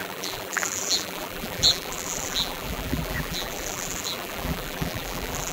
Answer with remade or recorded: remade